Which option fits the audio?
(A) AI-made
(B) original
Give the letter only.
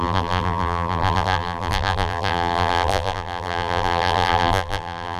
A